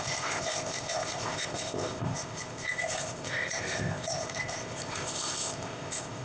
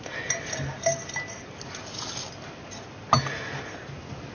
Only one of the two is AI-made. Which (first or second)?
first